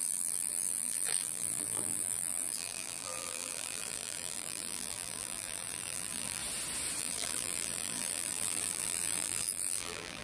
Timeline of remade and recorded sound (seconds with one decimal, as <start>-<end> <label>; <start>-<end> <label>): 0.0-6.4 remade; 6.4-7.0 recorded; 7.0-10.2 remade